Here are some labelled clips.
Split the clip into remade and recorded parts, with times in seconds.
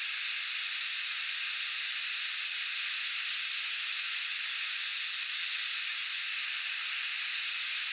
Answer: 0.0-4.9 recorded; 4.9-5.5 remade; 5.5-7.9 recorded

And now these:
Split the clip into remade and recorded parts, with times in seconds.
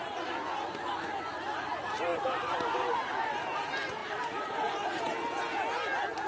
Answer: 0.0-4.0 recorded; 4.0-5.0 remade; 5.0-6.3 recorded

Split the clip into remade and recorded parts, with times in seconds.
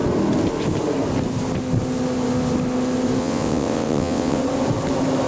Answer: 0.0-3.2 recorded; 3.2-4.4 remade; 4.4-5.3 recorded